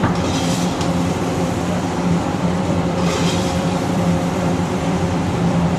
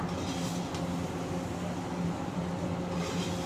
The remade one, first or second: first